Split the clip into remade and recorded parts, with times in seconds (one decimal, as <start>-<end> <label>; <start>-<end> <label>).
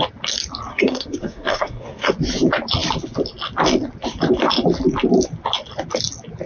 0.0-0.7 recorded; 0.7-2.1 remade; 2.1-6.5 recorded